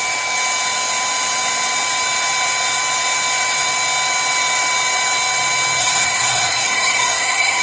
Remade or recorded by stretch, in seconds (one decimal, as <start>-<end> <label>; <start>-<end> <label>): 0.0-5.8 recorded; 5.8-7.6 remade